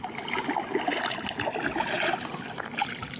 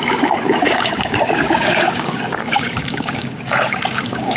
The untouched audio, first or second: first